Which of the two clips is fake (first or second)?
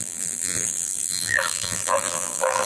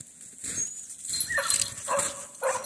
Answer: first